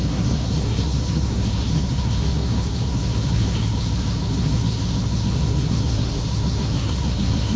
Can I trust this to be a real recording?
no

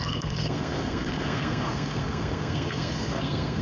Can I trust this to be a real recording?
no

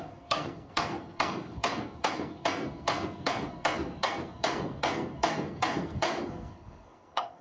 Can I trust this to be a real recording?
no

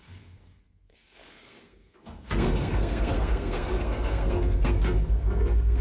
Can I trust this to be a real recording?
no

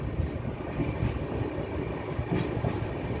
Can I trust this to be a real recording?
yes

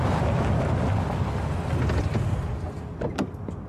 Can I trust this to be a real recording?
yes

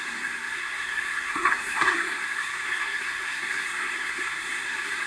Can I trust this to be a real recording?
no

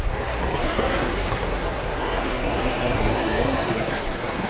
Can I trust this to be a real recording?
no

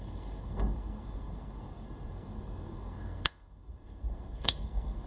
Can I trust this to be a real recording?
no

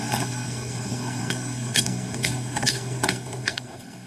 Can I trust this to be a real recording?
no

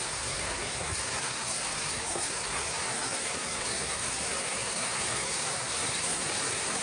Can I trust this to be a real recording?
no